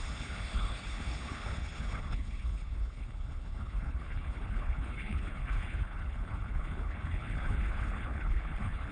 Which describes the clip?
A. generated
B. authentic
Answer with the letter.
A